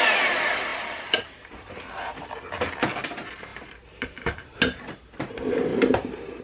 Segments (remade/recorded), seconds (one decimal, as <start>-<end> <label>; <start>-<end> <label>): 0.0-0.7 recorded; 0.7-2.3 remade; 2.3-5.7 recorded; 5.7-6.4 remade

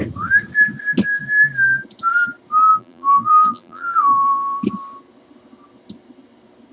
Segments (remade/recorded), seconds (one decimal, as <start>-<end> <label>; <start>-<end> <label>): 0.0-2.7 recorded; 2.7-4.6 remade; 4.6-6.7 recorded

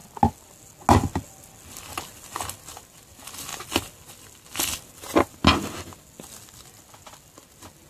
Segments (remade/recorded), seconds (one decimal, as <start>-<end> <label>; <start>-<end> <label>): 0.0-7.9 recorded

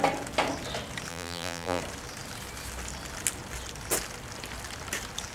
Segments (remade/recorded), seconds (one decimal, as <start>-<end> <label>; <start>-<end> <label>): 0.0-1.1 recorded; 1.1-1.8 remade; 1.8-5.3 recorded